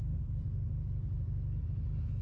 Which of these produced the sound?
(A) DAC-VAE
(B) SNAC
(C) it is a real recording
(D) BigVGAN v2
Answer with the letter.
C